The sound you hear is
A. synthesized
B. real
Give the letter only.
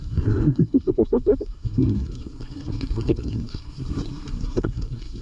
A